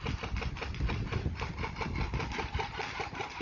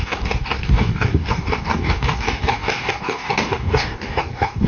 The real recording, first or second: first